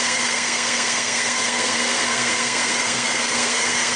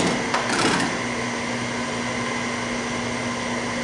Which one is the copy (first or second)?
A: first